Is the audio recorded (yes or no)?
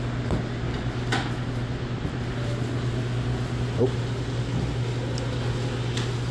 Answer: yes